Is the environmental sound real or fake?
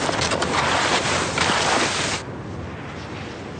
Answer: real